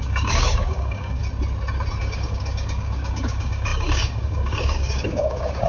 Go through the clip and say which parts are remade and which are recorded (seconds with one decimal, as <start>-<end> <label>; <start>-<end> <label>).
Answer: 0.0-1.2 remade; 1.2-2.0 recorded; 2.0-5.7 remade